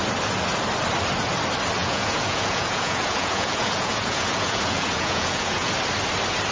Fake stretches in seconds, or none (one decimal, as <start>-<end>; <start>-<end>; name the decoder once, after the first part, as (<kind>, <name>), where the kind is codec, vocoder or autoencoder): 1.8-5.7 (vocoder, Vocos)